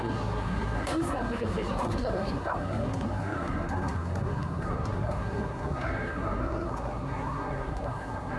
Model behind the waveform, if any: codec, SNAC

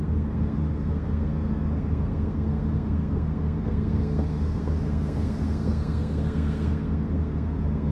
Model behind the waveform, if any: codec, SNAC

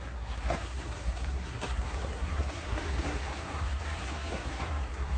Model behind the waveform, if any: codec, SNAC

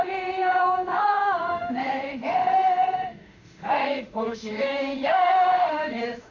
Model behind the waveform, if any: autoencoder, DAC-VAE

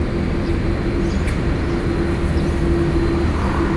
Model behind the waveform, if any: none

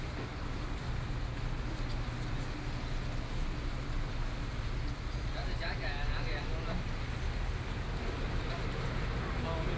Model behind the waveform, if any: none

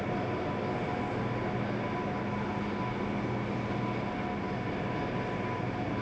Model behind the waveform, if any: none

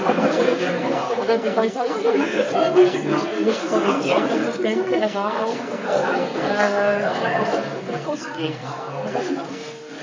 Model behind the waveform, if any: codec, SNAC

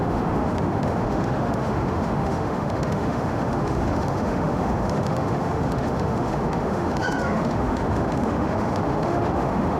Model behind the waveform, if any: autoencoder, DAC-VAE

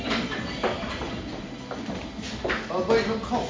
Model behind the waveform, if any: none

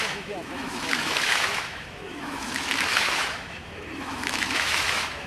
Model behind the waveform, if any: autoencoder, DAC-VAE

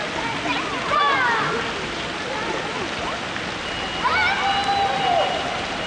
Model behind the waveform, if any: none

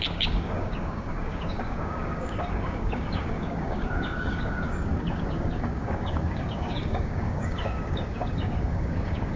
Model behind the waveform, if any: codec, DAC